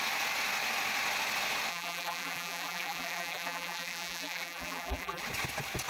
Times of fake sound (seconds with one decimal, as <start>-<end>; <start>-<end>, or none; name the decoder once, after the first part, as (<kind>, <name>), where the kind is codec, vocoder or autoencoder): 1.7-5.2 (vocoder, BigVGAN v2)